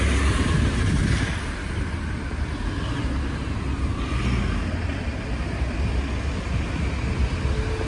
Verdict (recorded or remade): recorded